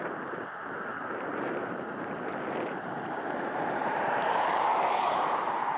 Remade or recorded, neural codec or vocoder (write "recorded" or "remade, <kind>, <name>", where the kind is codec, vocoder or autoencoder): remade, vocoder, BigVGAN v2